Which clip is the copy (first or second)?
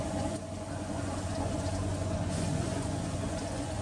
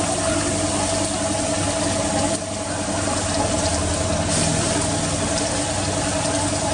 first